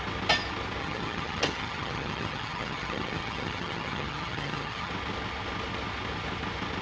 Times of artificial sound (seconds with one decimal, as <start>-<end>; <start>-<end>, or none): 0.8-4.9